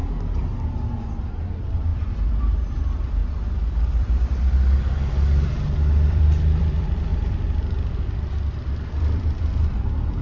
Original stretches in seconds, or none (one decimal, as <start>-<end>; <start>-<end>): 0.0-1.5; 3.2-3.7